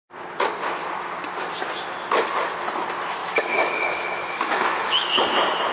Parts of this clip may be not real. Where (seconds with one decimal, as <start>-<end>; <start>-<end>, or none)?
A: 3.2-5.2